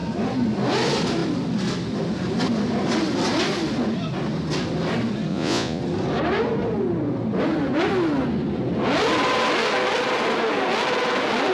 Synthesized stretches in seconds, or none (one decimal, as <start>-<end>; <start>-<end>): 5.3-5.8